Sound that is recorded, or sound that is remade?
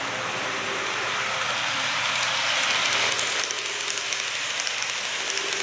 recorded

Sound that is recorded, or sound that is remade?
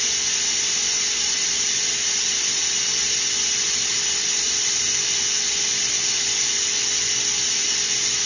recorded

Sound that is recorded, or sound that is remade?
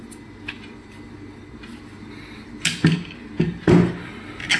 recorded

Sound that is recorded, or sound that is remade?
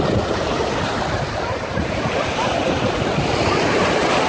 recorded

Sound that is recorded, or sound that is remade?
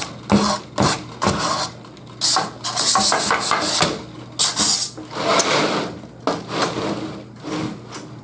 recorded